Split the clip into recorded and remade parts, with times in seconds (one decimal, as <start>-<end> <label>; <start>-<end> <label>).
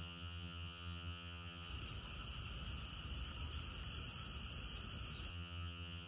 0.0-1.7 remade; 1.7-5.3 recorded; 5.3-6.1 remade